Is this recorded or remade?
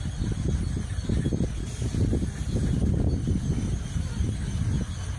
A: recorded